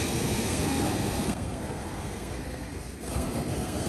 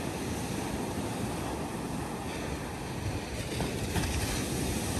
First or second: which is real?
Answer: second